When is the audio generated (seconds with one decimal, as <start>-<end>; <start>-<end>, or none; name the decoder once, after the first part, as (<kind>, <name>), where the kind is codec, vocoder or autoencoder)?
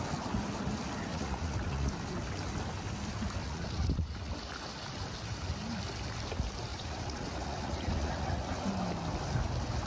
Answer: 1.1-1.9 (vocoder, Vocos); 3.4-4.3; 6.7-8.7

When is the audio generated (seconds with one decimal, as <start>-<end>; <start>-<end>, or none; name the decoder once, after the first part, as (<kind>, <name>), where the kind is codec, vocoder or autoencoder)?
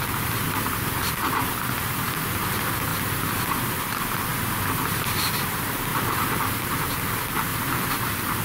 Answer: 0.0-2.9 (vocoder, BigVGAN v2); 3.5-4.3; 4.9-8.4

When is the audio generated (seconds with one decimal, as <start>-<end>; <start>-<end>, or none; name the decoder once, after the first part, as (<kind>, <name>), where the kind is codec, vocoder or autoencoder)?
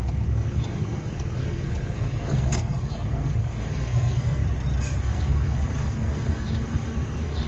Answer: 0.0-4.4 (codec, SNAC); 5.0-7.5